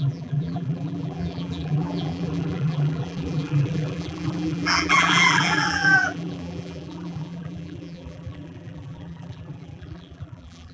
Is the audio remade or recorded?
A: remade